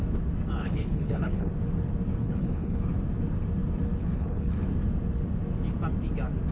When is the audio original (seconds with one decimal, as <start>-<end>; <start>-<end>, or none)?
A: 0.0-0.6; 1.5-2.2; 2.8-4.0; 4.6-6.5